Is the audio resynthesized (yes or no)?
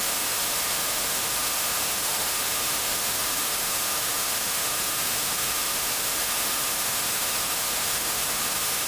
yes